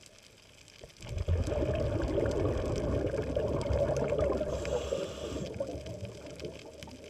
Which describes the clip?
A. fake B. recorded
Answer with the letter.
B